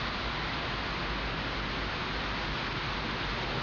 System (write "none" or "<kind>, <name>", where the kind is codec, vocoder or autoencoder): none